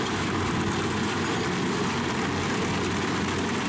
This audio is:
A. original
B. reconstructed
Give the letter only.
A